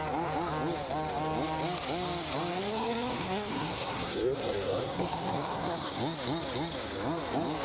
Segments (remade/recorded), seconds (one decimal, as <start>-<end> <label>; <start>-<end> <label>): 0.0-2.5 recorded; 2.5-6.0 remade; 6.0-7.6 recorded